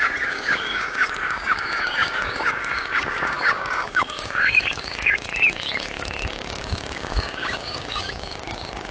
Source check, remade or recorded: remade